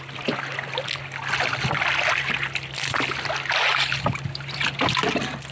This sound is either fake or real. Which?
real